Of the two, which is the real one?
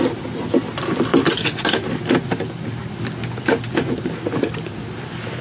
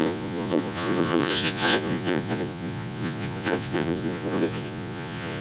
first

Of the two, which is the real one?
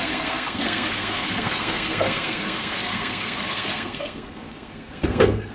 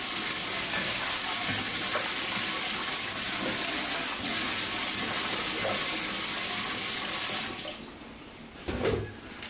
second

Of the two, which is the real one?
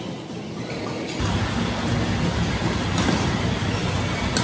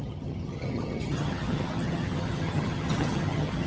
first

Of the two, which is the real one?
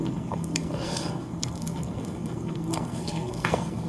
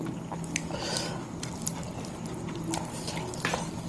second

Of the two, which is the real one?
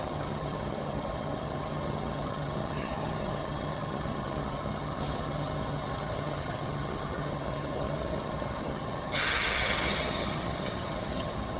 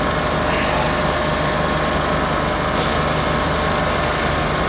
second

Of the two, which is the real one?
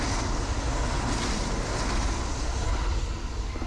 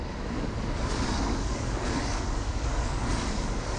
first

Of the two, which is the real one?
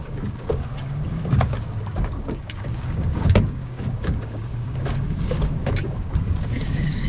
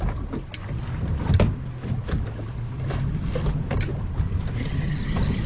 second